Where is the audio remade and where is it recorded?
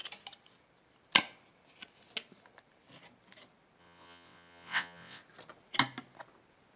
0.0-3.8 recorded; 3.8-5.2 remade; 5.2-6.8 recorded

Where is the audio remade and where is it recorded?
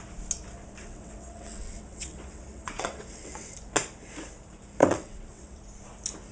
0.0-0.8 recorded; 0.8-3.5 remade; 3.5-4.8 recorded; 4.8-5.6 remade; 5.6-6.3 recorded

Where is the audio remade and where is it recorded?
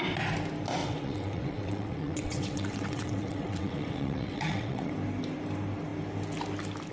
0.0-0.8 recorded; 0.8-4.9 remade; 4.9-6.9 recorded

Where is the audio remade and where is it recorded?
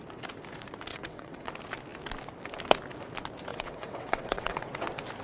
0.0-0.9 recorded; 0.9-1.5 remade; 1.5-3.5 recorded; 3.5-4.7 remade; 4.7-5.2 recorded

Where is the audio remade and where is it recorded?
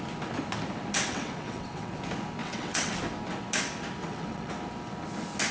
0.0-1.1 recorded; 1.1-1.9 remade; 1.9-2.4 recorded; 2.4-2.9 remade; 2.9-4.0 recorded; 4.0-4.5 remade; 4.5-5.5 recorded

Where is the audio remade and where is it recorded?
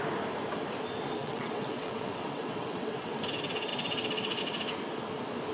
0.0-1.2 recorded; 1.2-3.2 remade; 3.2-5.5 recorded